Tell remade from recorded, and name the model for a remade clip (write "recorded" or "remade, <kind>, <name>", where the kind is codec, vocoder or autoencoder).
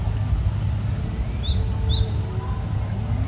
recorded